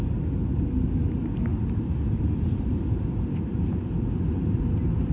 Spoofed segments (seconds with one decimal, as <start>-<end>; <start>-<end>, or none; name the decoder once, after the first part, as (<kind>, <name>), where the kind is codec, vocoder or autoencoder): 1.5-4.6 (vocoder, BigVGAN v2)